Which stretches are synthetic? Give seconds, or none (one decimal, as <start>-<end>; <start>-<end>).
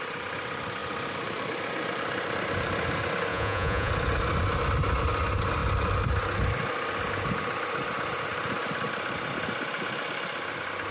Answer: 3.3-3.9